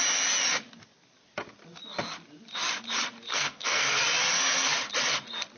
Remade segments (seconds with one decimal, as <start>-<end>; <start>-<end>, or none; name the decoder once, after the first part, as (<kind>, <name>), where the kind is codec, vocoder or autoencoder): 3.3-4.0 (codec, SNAC)